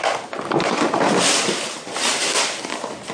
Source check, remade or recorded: recorded